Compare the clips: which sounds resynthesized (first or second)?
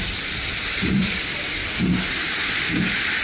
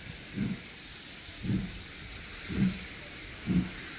first